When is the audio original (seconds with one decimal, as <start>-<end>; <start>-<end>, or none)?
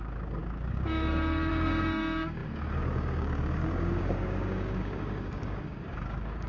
none